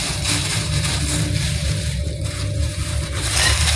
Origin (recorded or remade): remade